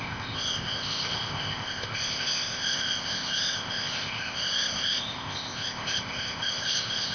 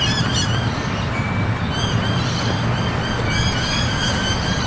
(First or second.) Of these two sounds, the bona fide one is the second